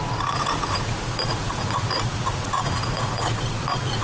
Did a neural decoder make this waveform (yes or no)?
yes